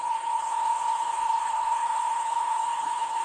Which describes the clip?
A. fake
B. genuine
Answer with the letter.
A